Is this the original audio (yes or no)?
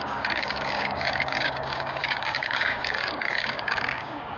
no